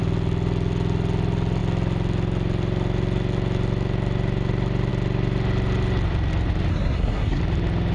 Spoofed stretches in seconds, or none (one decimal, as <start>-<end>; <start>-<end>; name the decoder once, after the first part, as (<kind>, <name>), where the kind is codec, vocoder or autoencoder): 6.7-7.4 (codec, SNAC)